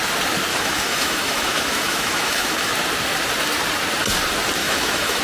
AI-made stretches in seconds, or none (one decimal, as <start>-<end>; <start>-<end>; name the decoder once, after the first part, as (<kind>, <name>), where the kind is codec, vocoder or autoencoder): 0.5-2.7 (autoencoder, DAC-VAE); 4.6-5.2